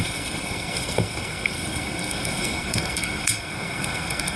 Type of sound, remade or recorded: remade